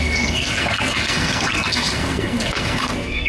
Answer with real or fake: fake